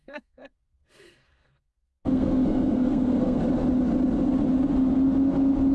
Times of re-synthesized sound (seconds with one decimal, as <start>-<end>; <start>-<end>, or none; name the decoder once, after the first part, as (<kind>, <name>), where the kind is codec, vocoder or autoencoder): 0.0-3.4 (codec, SNAC)